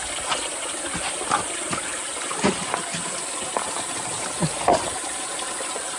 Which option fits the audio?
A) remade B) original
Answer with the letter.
B